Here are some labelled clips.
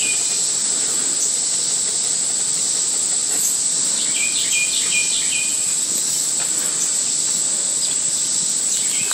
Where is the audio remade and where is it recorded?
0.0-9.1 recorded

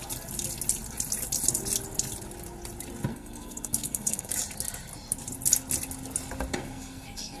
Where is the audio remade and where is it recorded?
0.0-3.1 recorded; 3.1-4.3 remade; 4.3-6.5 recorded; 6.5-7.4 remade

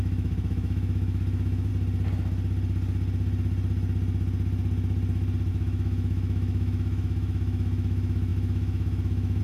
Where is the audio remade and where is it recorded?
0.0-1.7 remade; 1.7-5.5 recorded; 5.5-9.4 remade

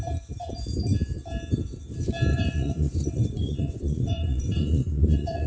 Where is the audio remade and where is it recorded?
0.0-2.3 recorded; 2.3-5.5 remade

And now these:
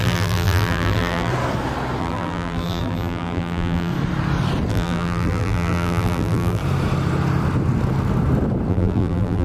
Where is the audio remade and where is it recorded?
0.0-1.3 remade; 1.3-2.0 recorded; 2.0-3.9 remade; 3.9-4.7 recorded; 4.7-6.6 remade; 6.6-8.7 recorded; 8.7-9.4 remade